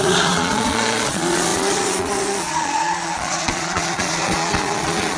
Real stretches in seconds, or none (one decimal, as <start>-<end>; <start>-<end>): none